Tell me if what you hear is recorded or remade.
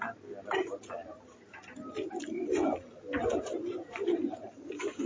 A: recorded